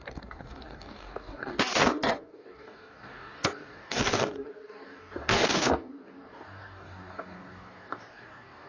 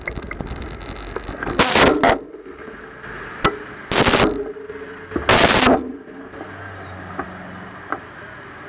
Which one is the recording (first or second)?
second